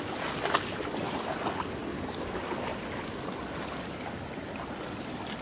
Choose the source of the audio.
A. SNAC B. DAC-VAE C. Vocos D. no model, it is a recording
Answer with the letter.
D